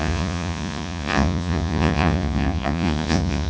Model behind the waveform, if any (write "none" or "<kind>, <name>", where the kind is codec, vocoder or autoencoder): vocoder, Vocos